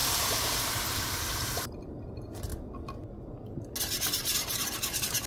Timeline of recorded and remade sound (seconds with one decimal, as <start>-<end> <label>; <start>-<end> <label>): 0.0-2.5 remade; 2.5-3.8 recorded; 3.8-5.3 remade